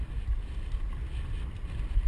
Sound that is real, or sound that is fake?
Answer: real